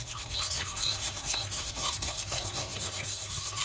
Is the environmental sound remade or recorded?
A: remade